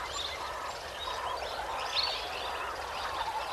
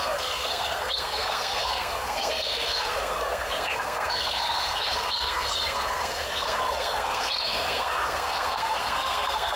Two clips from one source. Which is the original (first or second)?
first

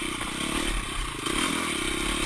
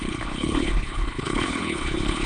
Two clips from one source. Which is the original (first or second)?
first